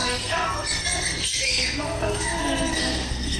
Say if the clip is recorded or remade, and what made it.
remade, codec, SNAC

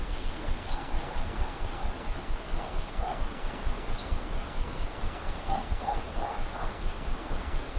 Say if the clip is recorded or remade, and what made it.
remade, codec, SNAC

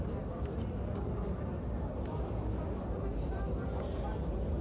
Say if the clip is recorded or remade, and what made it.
recorded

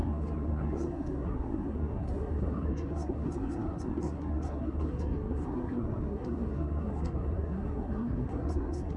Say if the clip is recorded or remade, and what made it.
remade, codec, SNAC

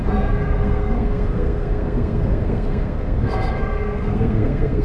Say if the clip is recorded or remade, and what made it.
remade, codec, SNAC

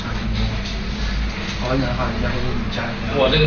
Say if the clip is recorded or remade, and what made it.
recorded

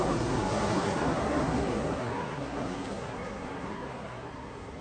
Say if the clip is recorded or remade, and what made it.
remade, codec, SNAC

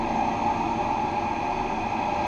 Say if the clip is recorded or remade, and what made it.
recorded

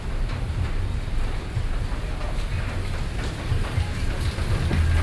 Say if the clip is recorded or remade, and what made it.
recorded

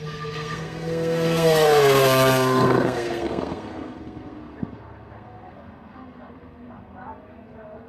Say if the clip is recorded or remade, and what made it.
remade, codec, SNAC